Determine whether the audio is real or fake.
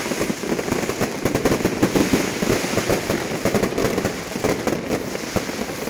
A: real